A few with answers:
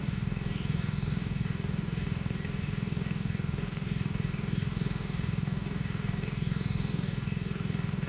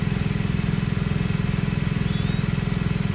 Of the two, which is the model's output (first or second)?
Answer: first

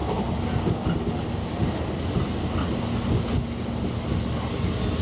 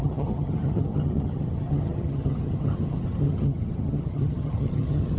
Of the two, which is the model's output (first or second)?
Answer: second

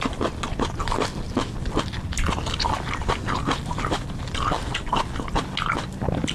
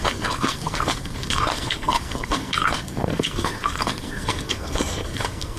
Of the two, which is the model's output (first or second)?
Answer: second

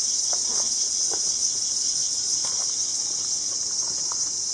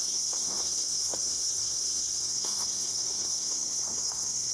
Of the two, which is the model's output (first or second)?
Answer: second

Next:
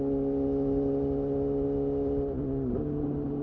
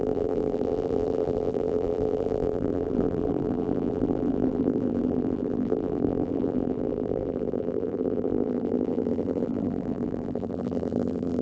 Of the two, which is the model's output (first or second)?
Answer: second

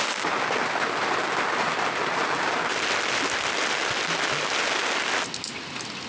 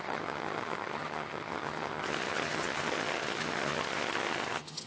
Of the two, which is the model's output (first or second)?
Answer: second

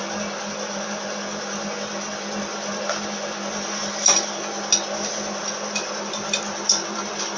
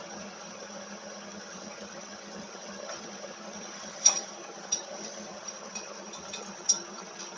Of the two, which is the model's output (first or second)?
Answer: second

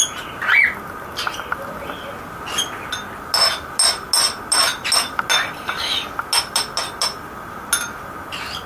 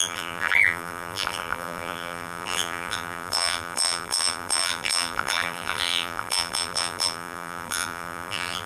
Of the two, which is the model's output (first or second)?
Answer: second